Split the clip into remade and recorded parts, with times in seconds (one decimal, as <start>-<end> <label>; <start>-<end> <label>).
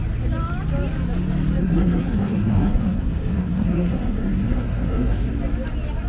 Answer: 0.0-1.6 recorded; 1.6-5.3 remade; 5.3-6.1 recorded